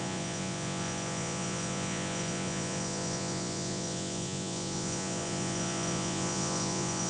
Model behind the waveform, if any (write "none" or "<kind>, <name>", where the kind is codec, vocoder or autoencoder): vocoder, Vocos